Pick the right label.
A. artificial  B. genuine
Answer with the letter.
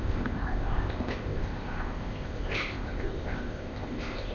A